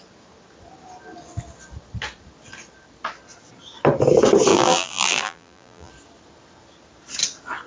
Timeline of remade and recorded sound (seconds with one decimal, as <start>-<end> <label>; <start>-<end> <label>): 0.0-4.5 recorded; 4.5-5.9 remade; 5.9-7.7 recorded